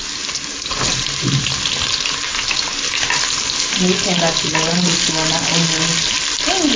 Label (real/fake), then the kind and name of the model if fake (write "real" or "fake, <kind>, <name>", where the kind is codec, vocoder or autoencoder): real